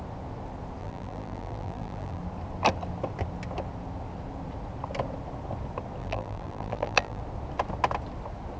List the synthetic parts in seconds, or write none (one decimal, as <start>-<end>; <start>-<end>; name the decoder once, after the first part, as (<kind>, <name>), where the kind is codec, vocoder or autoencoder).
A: 0.8-2.2 (vocoder, BigVGAN v2); 6.0-7.2